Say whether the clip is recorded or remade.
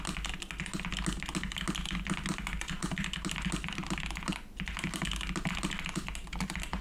recorded